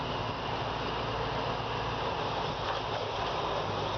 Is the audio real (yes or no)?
yes